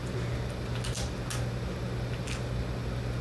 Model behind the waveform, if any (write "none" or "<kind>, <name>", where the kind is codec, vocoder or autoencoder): none